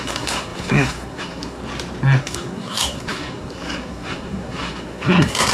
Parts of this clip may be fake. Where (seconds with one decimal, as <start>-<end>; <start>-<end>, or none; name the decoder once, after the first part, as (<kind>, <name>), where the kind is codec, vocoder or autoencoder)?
0.0-1.6 (codec, SNAC); 2.2-5.5